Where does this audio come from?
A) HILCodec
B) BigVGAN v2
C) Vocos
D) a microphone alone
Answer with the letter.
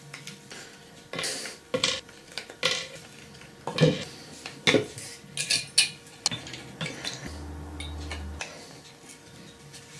D